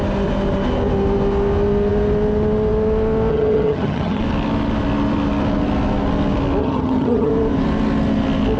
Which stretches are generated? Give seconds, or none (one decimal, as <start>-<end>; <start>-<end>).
3.3-4.2; 6.6-7.3